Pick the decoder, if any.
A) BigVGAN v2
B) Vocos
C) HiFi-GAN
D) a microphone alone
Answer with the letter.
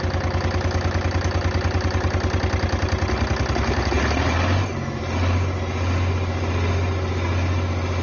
D